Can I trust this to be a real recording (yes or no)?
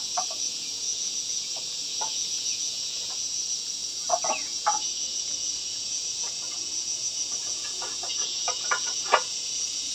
no